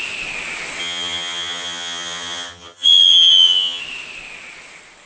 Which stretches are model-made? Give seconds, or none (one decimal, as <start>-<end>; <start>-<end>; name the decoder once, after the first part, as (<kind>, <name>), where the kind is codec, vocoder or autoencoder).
0.8-3.8 (vocoder, HiFi-GAN)